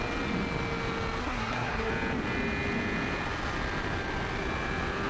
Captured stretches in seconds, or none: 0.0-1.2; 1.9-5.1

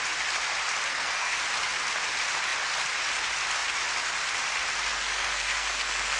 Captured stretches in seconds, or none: 0.0-0.9; 1.4-4.9

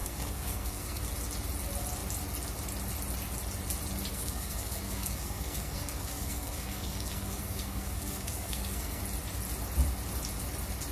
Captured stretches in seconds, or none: 1.1-4.1; 9.0-10.9